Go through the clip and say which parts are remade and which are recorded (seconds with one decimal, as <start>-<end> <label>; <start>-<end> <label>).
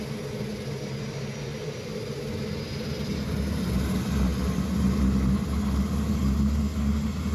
0.0-7.3 recorded